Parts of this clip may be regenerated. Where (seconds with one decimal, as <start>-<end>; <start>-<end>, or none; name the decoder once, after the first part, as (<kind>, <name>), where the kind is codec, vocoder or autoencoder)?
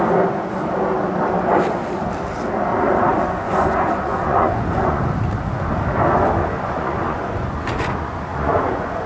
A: 2.7-5.0 (vocoder, Vocos); 6.4-9.1